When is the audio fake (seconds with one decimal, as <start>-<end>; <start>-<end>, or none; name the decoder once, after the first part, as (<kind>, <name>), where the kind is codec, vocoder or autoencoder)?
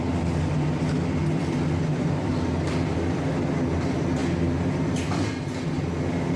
none